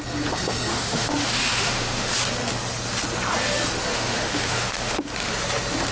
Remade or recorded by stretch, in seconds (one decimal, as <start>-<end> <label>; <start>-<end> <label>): 0.0-0.7 recorded; 0.7-2.1 remade; 2.1-3.9 recorded; 3.9-5.0 remade; 5.0-5.9 recorded